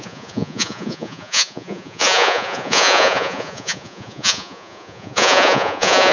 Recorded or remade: remade